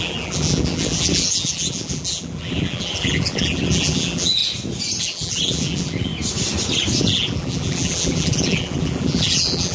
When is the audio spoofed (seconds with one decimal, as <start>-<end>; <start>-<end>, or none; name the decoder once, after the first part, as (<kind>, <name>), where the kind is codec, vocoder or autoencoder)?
0.0-4.4 (vocoder, BigVGAN v2); 5.0-6.1; 7.0-9.7